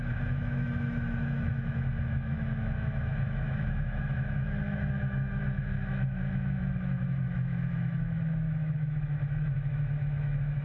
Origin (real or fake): fake